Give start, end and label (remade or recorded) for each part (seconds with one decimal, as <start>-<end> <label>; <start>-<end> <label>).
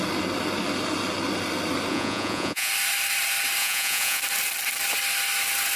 0.0-1.9 recorded; 1.9-2.7 remade; 2.7-3.6 recorded; 3.6-4.2 remade; 4.2-5.8 recorded